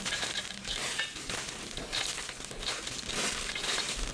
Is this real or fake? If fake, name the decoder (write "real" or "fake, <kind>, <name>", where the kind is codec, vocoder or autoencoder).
real